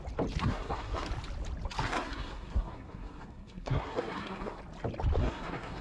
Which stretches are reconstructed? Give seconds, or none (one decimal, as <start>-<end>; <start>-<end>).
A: 0.4-1.1; 1.8-4.6; 5.2-5.8